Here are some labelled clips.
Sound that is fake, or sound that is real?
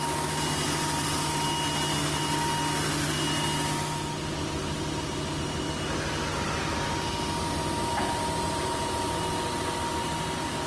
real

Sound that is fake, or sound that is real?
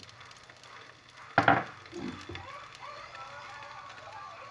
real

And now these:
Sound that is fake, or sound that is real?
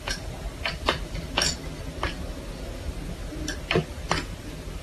real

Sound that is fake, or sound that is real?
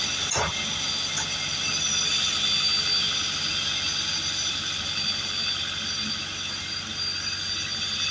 real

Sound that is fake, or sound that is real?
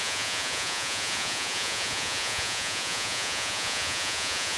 fake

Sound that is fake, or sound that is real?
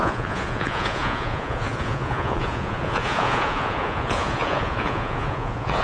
fake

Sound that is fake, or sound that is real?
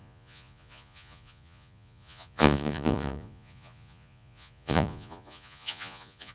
fake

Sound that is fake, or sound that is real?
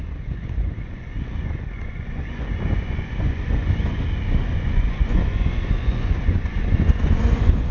fake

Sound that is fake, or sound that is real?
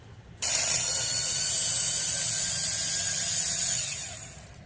real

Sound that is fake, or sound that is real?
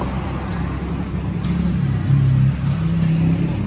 real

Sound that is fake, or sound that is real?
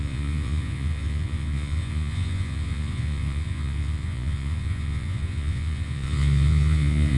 fake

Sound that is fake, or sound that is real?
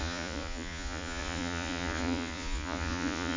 fake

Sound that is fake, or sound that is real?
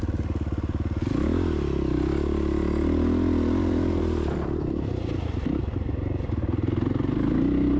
real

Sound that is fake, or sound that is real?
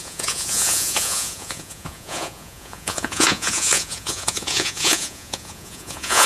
fake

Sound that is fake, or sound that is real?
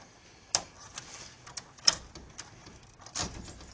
real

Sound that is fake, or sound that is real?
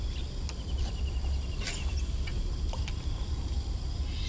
real